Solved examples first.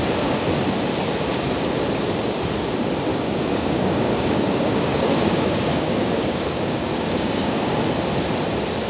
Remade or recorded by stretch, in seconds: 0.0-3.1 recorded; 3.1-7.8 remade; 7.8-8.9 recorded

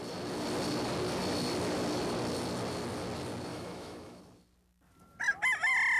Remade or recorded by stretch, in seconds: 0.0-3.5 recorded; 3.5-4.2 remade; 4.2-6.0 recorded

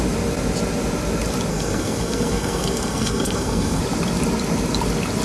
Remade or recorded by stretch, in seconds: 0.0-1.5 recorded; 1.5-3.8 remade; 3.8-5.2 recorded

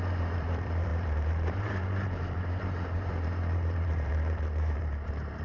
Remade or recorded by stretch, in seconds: 0.0-5.4 remade

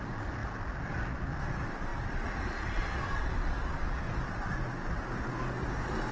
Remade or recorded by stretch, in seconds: 0.0-1.9 recorded; 1.9-2.6 remade; 2.6-6.1 recorded